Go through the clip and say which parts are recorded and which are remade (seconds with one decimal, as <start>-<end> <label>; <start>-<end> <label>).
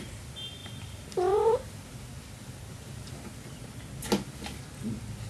0.0-0.6 recorded; 0.6-3.8 remade; 3.8-5.3 recorded